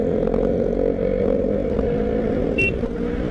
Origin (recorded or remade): recorded